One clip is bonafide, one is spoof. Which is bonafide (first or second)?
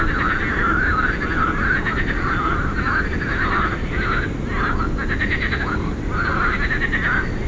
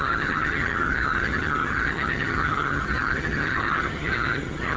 first